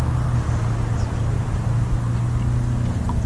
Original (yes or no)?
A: yes